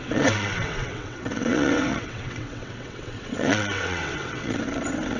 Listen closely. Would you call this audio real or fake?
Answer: fake